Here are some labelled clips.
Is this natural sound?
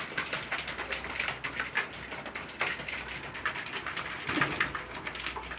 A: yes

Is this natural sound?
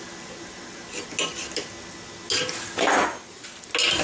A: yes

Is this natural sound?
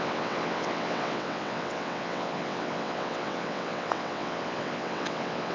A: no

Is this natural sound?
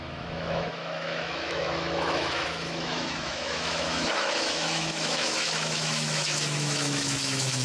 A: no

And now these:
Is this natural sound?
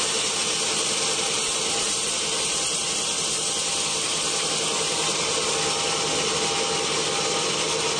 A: yes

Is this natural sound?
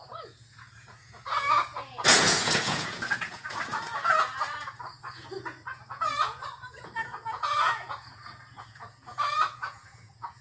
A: no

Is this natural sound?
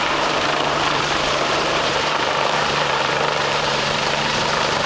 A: no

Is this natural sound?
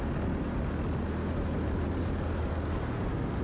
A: yes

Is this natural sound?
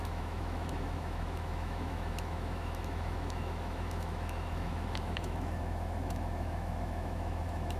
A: no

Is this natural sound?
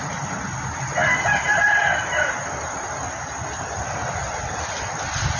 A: yes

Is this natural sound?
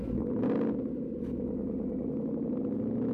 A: yes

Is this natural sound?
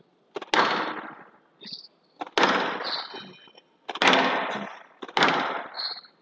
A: yes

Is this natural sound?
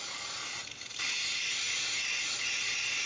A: yes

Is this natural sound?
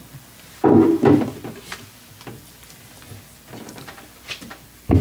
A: yes